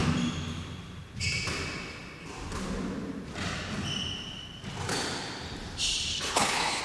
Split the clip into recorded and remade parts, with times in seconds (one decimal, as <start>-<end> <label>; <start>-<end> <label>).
0.0-6.1 recorded; 6.1-6.8 remade